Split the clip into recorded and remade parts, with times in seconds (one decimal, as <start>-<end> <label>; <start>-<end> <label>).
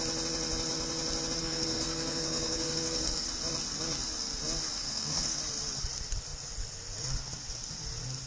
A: 0.0-1.4 recorded; 1.4-3.3 remade; 3.3-4.8 recorded; 4.8-5.4 remade; 5.4-8.3 recorded